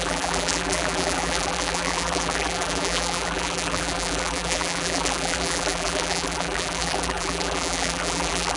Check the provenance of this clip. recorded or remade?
remade